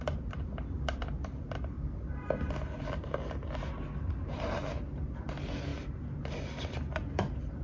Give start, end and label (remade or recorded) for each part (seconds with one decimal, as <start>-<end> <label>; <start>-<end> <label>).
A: 0.0-7.6 recorded